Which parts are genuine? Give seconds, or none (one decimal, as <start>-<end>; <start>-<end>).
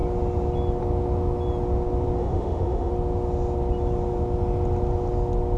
0.0-2.2; 2.9-5.6